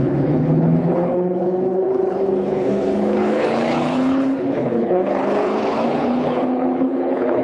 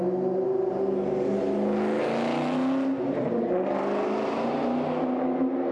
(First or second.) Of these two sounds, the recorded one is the second